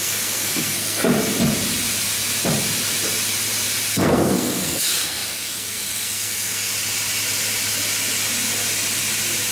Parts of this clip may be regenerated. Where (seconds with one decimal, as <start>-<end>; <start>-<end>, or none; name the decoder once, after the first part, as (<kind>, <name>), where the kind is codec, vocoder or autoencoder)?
0.0-1.1 (codec, SNAC); 3.9-6.7